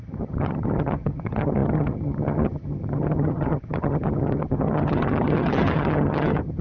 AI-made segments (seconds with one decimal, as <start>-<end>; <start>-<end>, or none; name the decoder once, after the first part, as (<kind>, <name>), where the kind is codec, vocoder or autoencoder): 0.0-6.6 (vocoder, HiFi-GAN)